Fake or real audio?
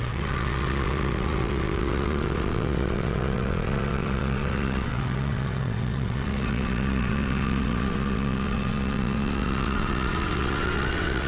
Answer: fake